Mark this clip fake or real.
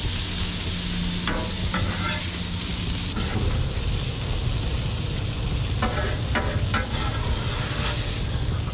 real